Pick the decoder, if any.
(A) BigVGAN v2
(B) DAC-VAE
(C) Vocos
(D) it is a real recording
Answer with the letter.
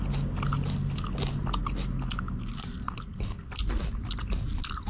D